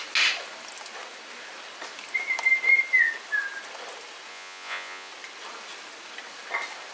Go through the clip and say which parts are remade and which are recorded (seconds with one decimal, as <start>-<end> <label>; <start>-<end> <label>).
0.0-4.3 recorded; 4.3-5.1 remade; 5.1-6.9 recorded